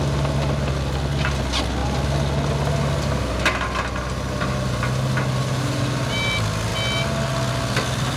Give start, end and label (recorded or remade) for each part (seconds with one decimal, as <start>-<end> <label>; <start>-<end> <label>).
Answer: 0.0-8.2 recorded